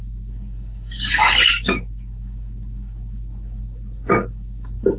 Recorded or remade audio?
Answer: remade